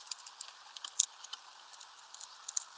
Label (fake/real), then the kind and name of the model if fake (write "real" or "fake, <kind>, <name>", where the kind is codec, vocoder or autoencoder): real